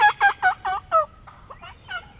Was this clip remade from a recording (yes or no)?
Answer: no